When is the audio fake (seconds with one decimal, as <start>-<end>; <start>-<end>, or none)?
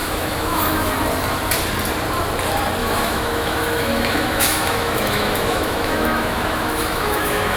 0.0-0.9; 2.8-7.6